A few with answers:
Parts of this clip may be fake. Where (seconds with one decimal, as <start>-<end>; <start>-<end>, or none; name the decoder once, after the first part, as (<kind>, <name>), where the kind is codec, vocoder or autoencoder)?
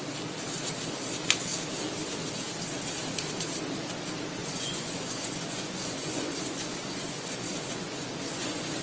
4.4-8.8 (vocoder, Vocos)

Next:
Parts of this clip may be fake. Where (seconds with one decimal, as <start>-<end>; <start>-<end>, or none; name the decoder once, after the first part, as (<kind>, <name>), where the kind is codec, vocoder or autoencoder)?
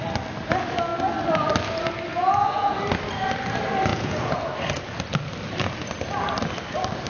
2.1-2.8 (vocoder, Vocos); 3.9-4.4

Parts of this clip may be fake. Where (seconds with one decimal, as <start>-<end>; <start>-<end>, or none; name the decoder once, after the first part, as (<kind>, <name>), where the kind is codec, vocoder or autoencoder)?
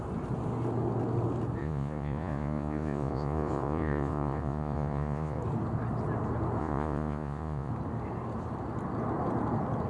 1.6-5.4 (vocoder, Vocos); 6.6-7.7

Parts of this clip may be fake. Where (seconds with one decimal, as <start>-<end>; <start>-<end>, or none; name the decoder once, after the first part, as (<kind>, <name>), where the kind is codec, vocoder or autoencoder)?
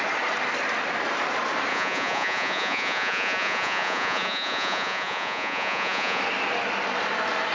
1.7-6.2 (vocoder, Vocos)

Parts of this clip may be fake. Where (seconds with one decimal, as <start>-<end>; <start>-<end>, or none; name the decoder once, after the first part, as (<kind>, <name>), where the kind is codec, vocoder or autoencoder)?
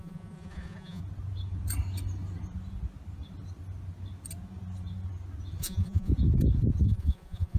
0.0-1.0 (vocoder, Vocos); 5.6-6.1; 6.8-7.6